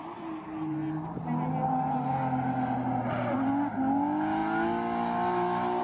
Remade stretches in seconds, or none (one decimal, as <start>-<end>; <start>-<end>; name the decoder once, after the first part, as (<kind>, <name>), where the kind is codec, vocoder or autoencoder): none